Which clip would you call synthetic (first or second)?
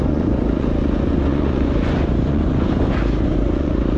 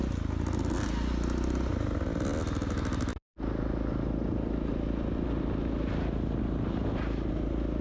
first